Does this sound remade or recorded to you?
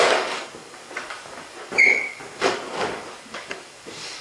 remade